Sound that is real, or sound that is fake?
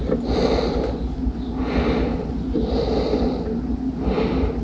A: real